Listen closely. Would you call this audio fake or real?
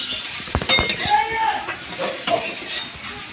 real